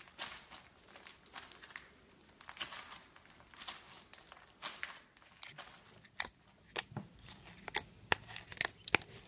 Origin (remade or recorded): recorded